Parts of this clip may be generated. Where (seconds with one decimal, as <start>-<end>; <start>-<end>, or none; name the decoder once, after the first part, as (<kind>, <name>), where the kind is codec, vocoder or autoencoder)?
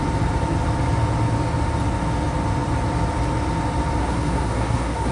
4.0-5.1 (codec, SNAC)